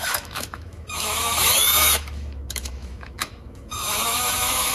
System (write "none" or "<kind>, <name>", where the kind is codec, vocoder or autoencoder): autoencoder, DAC-VAE